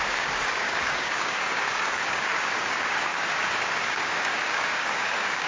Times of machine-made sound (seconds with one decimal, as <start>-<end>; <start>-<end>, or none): 0.0-5.5